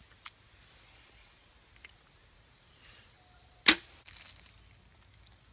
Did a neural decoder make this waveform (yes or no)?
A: no